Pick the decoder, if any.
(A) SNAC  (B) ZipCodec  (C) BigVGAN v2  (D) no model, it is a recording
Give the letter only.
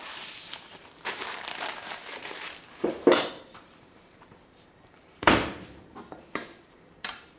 C